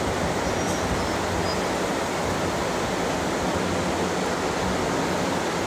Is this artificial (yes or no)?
no